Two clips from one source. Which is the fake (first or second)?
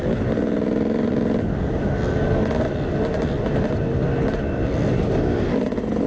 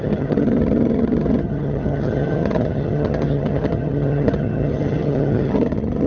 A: second